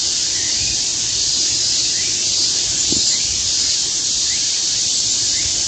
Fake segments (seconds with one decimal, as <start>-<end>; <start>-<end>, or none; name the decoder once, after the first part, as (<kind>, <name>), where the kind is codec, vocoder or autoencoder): 0.0-0.9 (vocoder, BigVGAN v2); 2.3-5.7